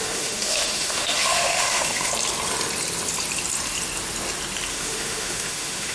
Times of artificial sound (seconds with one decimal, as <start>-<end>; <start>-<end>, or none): 0.0-2.1; 4.7-5.9